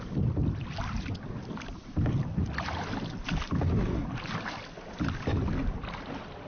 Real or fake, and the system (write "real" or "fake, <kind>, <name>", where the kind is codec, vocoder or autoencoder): real